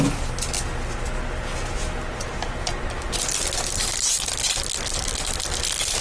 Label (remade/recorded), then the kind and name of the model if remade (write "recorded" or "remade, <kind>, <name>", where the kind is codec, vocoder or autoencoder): recorded